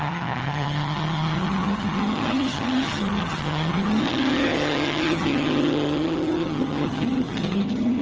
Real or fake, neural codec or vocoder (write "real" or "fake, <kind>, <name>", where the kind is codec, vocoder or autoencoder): fake, vocoder, HiFi-GAN